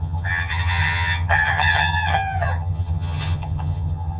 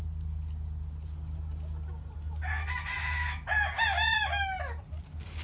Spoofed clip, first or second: first